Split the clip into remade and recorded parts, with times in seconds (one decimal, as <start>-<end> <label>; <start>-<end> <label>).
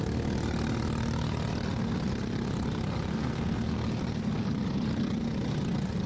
0.0-3.1 recorded; 3.1-3.7 remade; 3.7-6.1 recorded